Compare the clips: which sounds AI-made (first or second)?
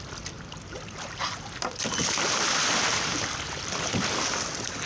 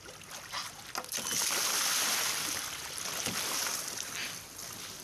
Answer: first